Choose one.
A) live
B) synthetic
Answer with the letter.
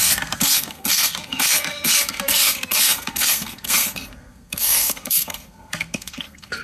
B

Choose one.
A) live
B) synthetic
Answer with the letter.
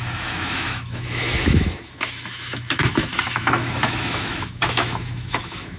B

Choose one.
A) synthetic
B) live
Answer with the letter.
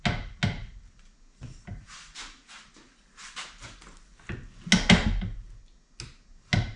B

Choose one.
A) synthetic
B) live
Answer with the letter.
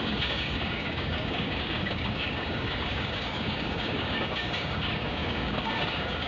A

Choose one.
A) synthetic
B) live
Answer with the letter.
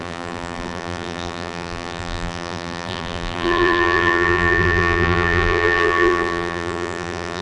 A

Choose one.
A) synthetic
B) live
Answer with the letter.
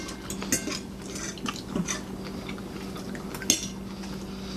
B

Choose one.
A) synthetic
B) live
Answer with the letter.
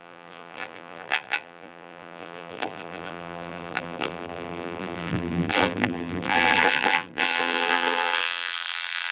A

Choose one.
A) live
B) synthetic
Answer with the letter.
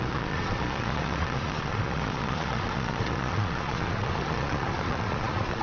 B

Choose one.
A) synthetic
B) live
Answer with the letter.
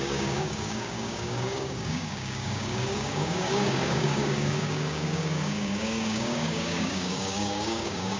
A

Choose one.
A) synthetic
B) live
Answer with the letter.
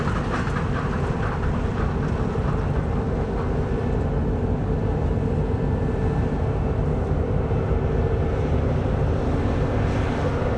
B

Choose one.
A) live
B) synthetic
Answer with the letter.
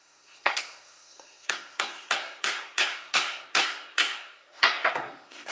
B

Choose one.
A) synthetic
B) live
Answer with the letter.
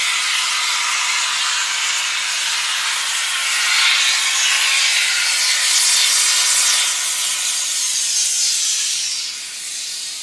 B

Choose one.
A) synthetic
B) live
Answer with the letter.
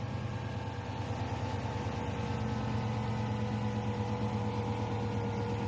B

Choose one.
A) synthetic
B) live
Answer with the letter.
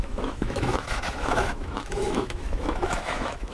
A